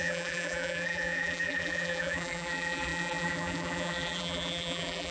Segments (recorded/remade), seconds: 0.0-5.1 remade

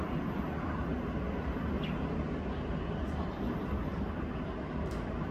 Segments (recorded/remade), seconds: 0.0-0.9 remade; 0.9-2.8 recorded; 2.8-3.9 remade; 3.9-4.8 recorded; 4.8-5.3 remade

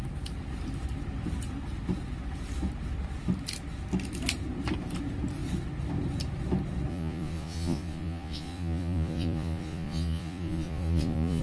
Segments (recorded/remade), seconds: 0.0-6.9 recorded; 6.9-11.4 remade